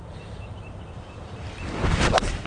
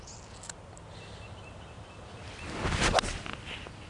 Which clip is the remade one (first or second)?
first